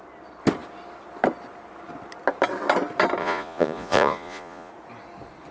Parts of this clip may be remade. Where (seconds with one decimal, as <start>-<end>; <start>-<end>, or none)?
3.2-4.7

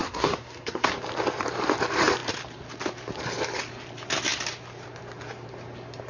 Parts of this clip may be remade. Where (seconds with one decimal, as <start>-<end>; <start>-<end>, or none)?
0.0-0.9